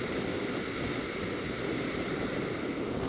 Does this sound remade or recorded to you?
recorded